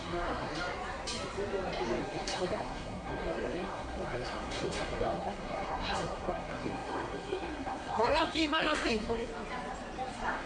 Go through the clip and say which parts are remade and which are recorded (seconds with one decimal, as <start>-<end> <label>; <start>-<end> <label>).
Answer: 0.0-0.5 remade; 0.5-2.0 recorded; 2.0-9.3 remade; 9.3-10.1 recorded; 10.1-10.5 remade